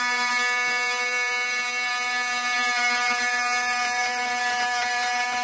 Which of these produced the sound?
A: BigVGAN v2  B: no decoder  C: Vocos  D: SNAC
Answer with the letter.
A